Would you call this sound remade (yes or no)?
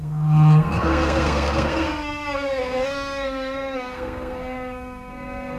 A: yes